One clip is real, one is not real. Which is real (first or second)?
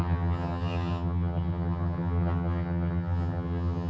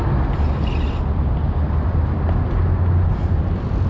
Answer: second